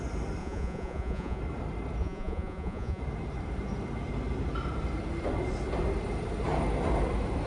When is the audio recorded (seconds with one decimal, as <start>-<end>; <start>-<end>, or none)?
0.0-0.4; 1.4-2.0; 3.0-7.5